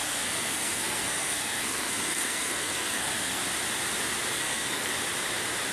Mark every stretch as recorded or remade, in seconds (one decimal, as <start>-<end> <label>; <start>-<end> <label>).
0.0-3.4 remade; 3.4-4.3 recorded; 4.3-4.9 remade; 4.9-5.7 recorded